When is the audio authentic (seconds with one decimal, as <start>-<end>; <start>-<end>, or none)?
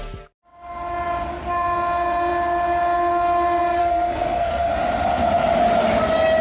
0.0-3.8; 4.7-6.4